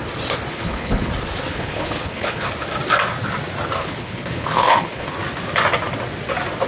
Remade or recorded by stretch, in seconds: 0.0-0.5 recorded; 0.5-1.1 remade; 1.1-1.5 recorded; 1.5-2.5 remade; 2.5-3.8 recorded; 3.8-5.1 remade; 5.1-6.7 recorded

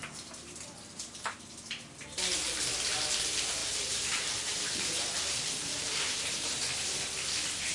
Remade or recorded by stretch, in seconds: 0.0-1.4 remade; 1.4-3.6 recorded; 3.6-6.3 remade; 6.3-7.7 recorded

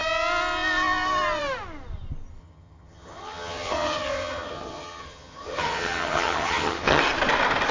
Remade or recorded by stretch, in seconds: 0.0-2.4 recorded; 2.4-7.0 remade; 7.0-7.7 recorded

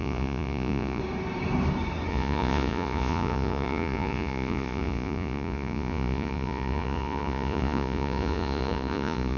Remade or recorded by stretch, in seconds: 0.0-1.0 remade; 1.0-2.1 recorded; 2.1-9.4 remade

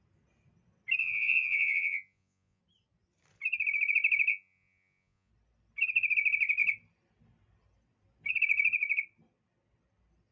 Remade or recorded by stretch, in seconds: 0.0-1.0 recorded; 1.0-2.6 remade; 2.6-4.3 recorded; 4.3-5.3 remade; 5.3-10.3 recorded

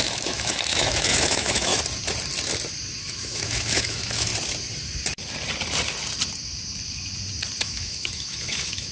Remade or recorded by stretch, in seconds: 0.0-1.7 remade; 1.7-3.0 recorded; 3.0-4.3 remade; 4.3-7.6 recorded; 7.6-8.9 remade

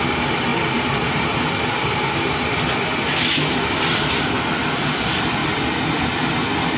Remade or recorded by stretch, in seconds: 0.0-6.8 remade